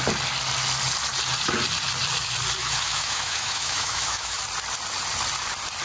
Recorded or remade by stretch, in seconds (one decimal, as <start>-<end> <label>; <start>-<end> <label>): 0.0-2.6 recorded; 2.6-4.4 remade; 4.4-5.8 recorded